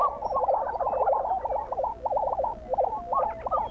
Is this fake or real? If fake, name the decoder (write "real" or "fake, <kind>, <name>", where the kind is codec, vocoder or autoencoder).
real